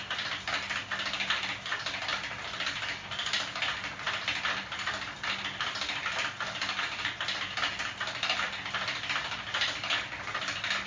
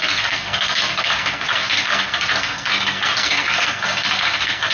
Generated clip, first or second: second